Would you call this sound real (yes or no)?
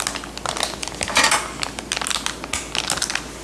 yes